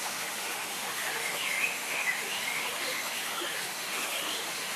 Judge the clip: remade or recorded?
remade